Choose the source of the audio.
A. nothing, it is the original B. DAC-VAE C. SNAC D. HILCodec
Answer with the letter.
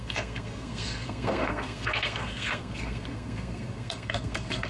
C